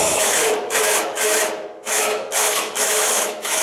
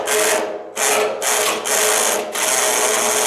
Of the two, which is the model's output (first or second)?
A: first